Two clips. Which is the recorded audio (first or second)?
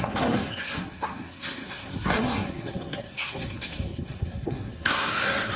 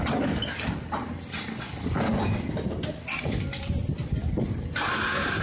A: second